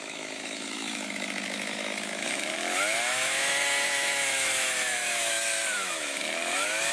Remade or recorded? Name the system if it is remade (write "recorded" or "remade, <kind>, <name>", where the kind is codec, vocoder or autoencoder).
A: remade, autoencoder, DAC-VAE